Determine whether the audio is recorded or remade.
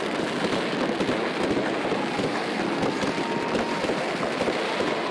recorded